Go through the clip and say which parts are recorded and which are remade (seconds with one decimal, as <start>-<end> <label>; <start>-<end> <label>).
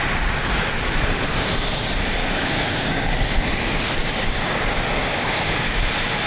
0.0-2.2 recorded; 2.2-3.1 remade; 3.1-4.0 recorded; 4.0-4.6 remade; 4.6-5.0 recorded; 5.0-5.7 remade; 5.7-6.3 recorded